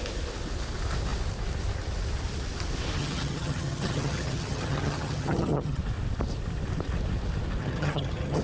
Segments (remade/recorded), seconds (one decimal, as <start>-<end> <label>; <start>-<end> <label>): 0.0-3.0 recorded; 3.0-5.8 remade; 5.8-7.6 recorded; 7.6-8.4 remade